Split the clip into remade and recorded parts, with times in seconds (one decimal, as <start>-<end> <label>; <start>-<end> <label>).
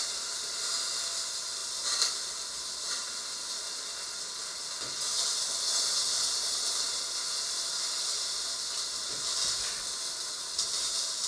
0.0-11.3 recorded